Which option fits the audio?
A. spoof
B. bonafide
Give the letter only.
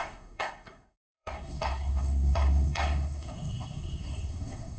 A